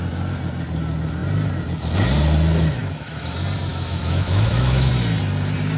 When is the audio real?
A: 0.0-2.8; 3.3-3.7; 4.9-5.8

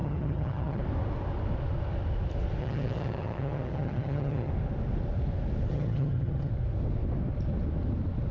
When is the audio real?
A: 0.8-2.6; 4.5-5.7; 6.5-8.3

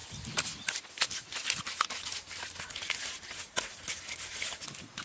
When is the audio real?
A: 0.0-5.0

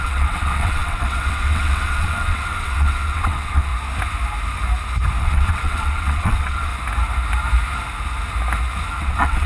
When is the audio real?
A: 3.7-5.2; 6.7-9.0

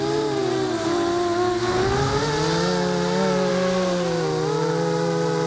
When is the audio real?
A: 0.0-5.5

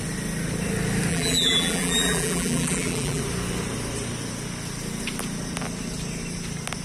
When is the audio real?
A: 0.0-1.1; 3.2-6.8